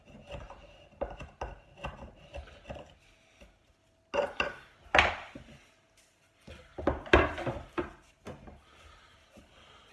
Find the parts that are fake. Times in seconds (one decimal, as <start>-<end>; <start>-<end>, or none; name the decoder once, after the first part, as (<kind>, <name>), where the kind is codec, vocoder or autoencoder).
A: none